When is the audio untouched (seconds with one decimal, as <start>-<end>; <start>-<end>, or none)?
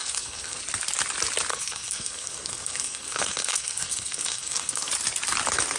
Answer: 0.6-1.5; 4.9-5.8